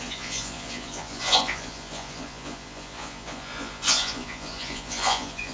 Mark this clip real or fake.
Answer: fake